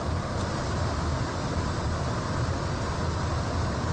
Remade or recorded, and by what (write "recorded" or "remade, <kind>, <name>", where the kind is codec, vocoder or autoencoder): recorded